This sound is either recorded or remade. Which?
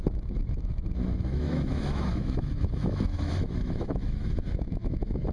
remade